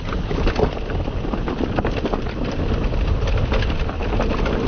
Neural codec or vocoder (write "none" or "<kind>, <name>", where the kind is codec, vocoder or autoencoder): none